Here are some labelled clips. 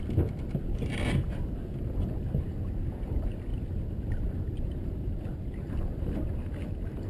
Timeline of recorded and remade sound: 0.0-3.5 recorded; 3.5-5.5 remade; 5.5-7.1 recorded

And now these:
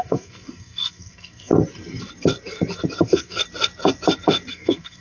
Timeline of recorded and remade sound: 0.0-1.5 remade; 1.5-3.0 recorded; 3.0-3.4 remade; 3.4-4.5 recorded; 4.5-5.0 remade

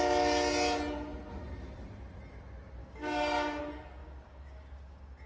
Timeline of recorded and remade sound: 0.0-2.8 recorded; 2.8-3.6 remade; 3.6-4.0 recorded; 4.0-5.3 remade

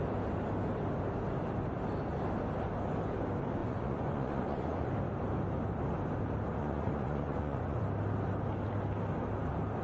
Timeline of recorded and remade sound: 0.0-3.6 recorded; 3.6-4.9 remade; 4.9-6.6 recorded; 6.6-7.8 remade; 7.8-9.8 recorded

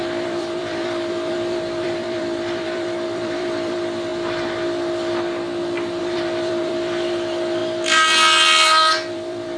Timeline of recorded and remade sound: 0.0-4.1 remade; 4.1-6.0 recorded; 6.0-7.6 remade; 7.6-9.1 recorded; 9.1-9.6 remade

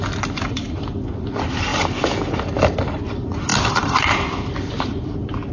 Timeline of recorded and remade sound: 0.0-1.7 remade; 1.7-2.4 recorded; 2.4-5.5 remade